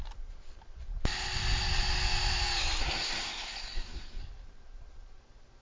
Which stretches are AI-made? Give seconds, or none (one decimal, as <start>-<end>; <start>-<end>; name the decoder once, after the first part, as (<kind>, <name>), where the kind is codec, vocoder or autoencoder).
2.8-4.2 (codec, SNAC)